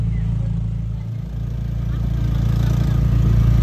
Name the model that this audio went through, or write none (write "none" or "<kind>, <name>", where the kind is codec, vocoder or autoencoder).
none